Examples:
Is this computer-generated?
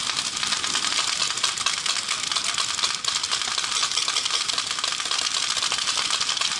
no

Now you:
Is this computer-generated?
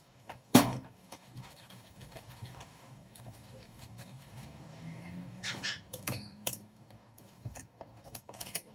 yes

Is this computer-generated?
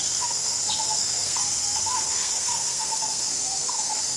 yes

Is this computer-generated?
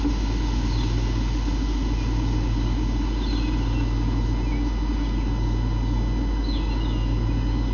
no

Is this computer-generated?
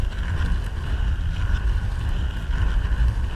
yes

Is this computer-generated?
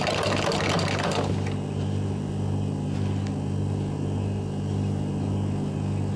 no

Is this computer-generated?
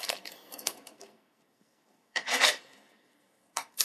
yes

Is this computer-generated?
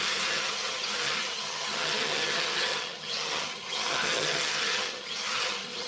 yes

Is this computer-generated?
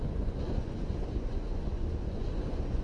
yes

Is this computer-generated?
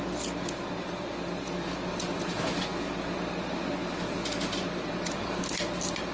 no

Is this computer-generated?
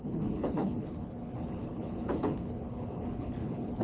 yes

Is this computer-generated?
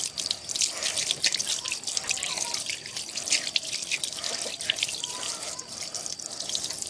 no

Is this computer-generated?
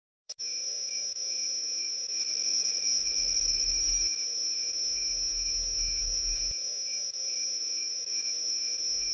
yes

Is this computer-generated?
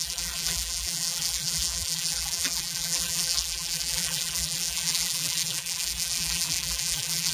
yes